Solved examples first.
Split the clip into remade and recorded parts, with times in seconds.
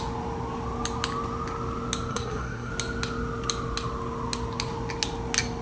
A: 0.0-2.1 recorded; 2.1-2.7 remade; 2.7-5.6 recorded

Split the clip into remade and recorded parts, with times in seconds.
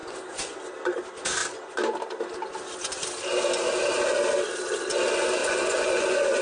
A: 0.0-0.6 remade; 0.6-5.4 recorded; 5.4-6.4 remade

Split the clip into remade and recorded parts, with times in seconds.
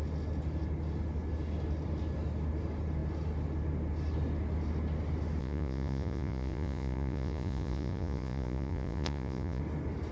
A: 0.0-5.4 recorded; 5.4-9.6 remade; 9.6-10.1 recorded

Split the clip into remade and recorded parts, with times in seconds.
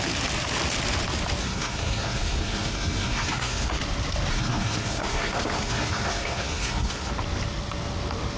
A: 0.0-1.4 recorded; 1.4-3.8 remade; 3.8-4.3 recorded; 4.3-7.1 remade; 7.1-8.4 recorded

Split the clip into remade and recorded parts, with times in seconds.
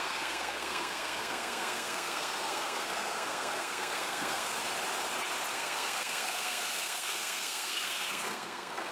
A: 0.0-4.6 remade; 4.6-5.5 recorded; 5.5-8.9 remade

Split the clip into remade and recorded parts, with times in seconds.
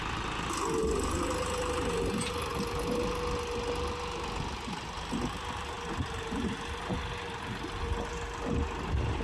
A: 0.0-9.2 recorded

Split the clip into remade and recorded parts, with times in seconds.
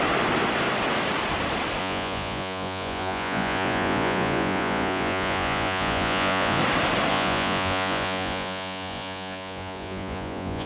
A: 0.0-1.8 recorded; 1.8-6.6 remade; 6.6-7.1 recorded; 7.1-10.7 remade